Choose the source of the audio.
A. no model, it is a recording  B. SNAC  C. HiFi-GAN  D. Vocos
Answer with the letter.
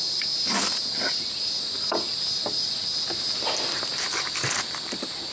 A